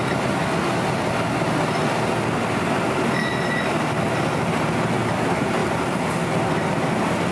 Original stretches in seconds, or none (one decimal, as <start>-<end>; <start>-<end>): 0.0-7.3